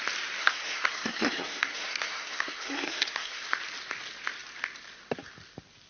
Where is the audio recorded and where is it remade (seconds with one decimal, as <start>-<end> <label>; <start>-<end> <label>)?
0.0-0.4 recorded; 0.4-3.4 remade; 3.4-5.9 recorded